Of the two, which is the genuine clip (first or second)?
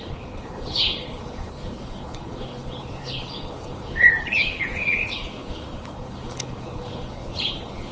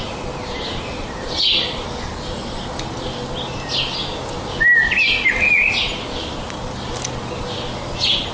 second